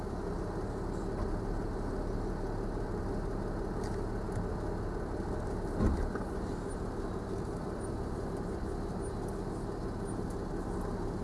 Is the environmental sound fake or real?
real